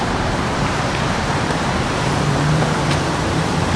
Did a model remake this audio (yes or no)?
yes